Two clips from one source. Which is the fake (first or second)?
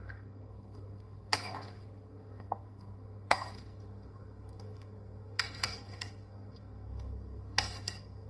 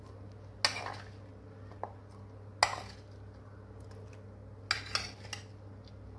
first